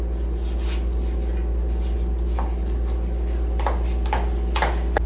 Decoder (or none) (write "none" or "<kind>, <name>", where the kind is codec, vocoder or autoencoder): none